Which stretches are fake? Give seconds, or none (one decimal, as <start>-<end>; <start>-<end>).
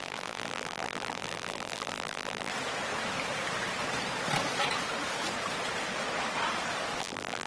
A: 0.0-2.5; 7.0-7.5